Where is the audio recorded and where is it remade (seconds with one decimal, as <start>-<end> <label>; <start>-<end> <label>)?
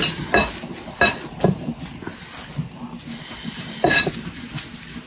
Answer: 0.0-2.1 recorded; 2.1-4.4 remade; 4.4-5.1 recorded